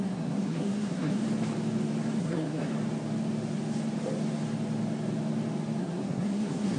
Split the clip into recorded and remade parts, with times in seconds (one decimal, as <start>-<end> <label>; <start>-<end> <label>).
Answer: 0.0-1.2 remade; 1.2-2.2 recorded; 2.2-2.7 remade; 2.7-5.8 recorded; 5.8-6.8 remade